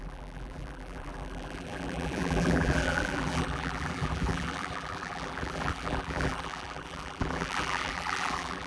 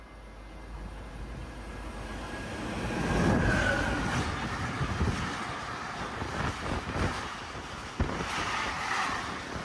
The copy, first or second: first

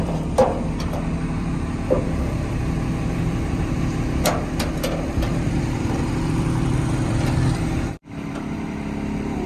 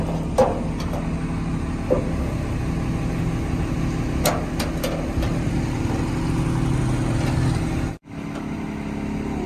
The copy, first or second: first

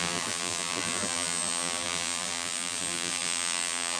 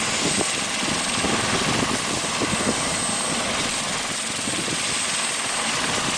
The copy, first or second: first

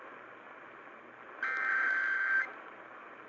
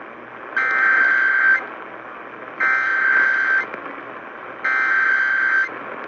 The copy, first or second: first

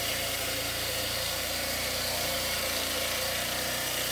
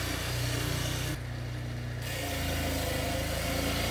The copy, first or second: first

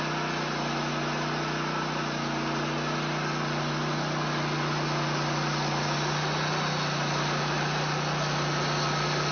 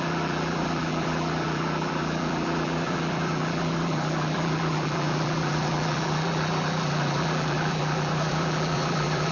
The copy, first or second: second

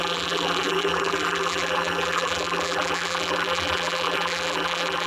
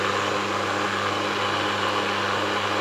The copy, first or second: first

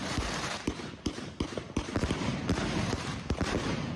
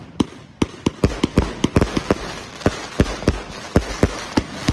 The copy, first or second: first